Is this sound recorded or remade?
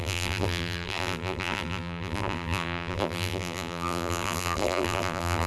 remade